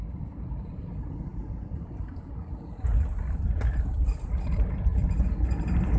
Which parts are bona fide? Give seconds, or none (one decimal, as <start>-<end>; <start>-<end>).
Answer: 0.0-6.0